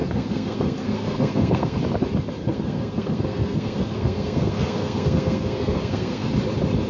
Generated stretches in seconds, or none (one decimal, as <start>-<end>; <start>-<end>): 0.0-1.8; 2.4-6.3